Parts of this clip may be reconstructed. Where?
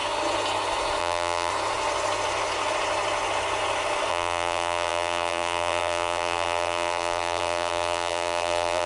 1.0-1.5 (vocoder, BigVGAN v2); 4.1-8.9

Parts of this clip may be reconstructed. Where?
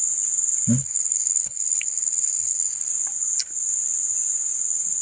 0.8-2.9 (codec, HILCodec)